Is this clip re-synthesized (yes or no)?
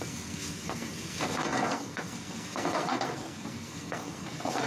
yes